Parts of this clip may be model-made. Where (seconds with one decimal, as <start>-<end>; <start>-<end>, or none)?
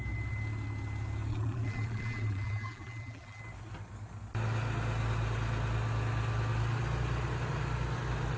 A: 1.3-3.4